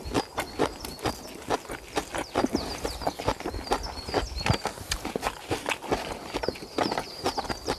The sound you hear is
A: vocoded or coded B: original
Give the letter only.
B